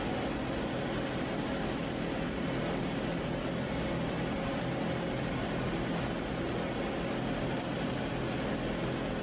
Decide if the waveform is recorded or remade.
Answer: recorded